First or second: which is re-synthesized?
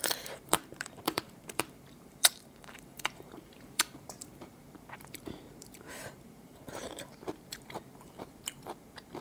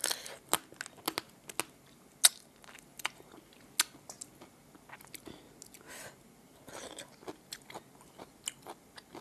first